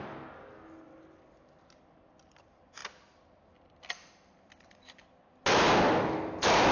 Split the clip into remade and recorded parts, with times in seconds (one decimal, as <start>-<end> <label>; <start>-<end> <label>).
0.0-6.7 recorded